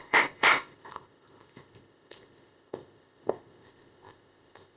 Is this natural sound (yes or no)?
no